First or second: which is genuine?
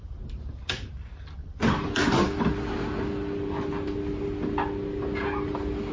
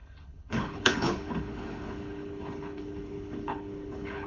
first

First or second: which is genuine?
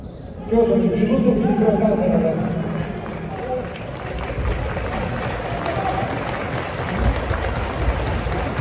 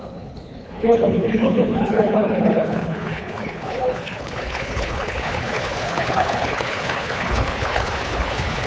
first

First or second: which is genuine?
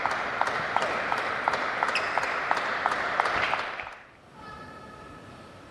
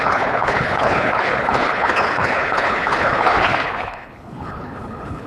first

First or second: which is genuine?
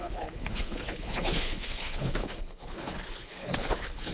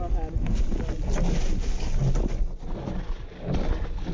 second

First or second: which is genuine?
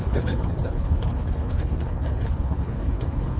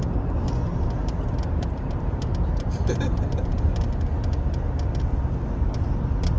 second